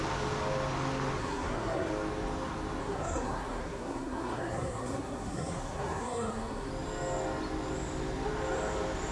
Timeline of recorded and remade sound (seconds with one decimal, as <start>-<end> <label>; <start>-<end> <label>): 0.0-1.2 recorded; 1.2-1.9 remade; 1.9-2.8 recorded; 2.8-6.7 remade; 6.7-9.1 recorded